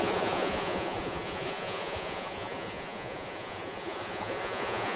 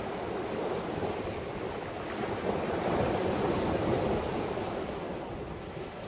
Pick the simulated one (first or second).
first